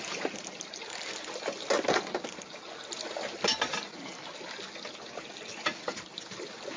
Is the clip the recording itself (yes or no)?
yes